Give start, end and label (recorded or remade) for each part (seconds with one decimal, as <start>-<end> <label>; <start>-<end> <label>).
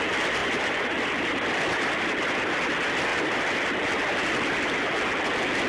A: 0.0-0.4 recorded; 0.4-1.9 remade; 1.9-3.1 recorded; 3.1-3.7 remade; 3.7-4.2 recorded; 4.2-5.0 remade; 5.0-5.7 recorded